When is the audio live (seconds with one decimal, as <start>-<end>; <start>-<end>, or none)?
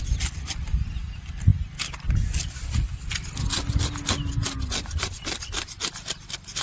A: 0.0-6.6